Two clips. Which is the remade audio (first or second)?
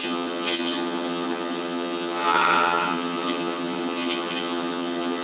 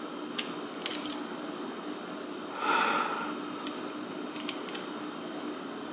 first